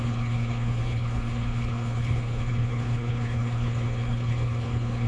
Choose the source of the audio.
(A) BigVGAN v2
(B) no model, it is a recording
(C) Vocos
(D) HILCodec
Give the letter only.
D